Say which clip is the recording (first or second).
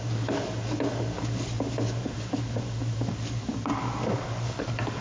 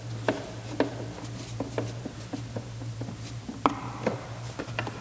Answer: second